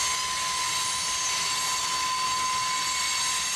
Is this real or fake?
real